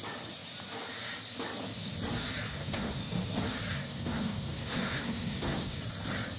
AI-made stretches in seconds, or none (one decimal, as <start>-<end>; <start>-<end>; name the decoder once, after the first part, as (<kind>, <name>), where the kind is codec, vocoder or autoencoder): 2.5-3.0 (codec, SNAC); 3.7-5.8